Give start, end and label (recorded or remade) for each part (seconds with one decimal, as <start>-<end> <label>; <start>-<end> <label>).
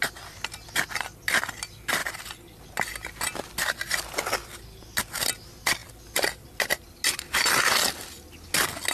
0.0-8.9 recorded